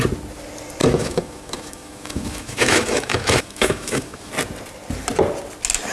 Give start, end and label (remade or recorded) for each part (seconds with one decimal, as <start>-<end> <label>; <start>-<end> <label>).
0.0-0.8 recorded; 0.8-4.3 remade; 4.3-5.9 recorded